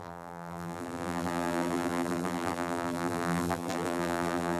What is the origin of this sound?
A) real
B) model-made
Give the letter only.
B